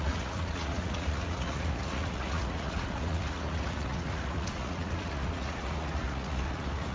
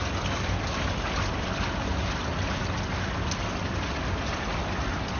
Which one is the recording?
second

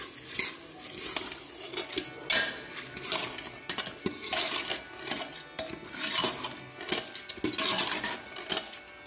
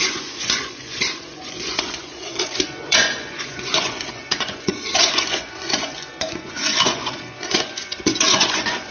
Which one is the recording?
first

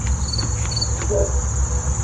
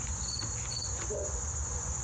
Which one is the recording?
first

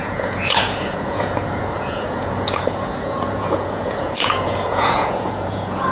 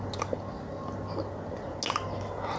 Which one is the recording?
second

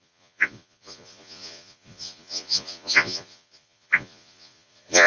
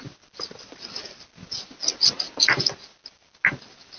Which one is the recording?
second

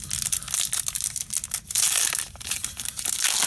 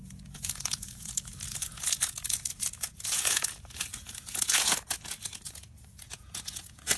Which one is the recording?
first